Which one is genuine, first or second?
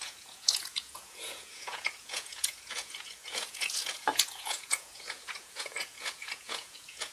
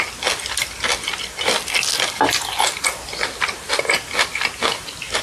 second